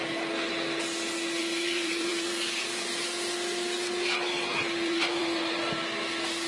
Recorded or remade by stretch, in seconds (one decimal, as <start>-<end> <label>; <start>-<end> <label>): 0.0-1.4 recorded; 1.4-3.0 remade; 3.0-4.5 recorded; 4.5-5.8 remade; 5.8-6.5 recorded